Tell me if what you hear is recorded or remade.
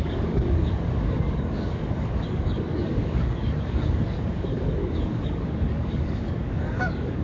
remade